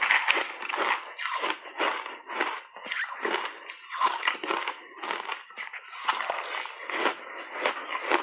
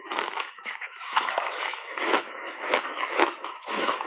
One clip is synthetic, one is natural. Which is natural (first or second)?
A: first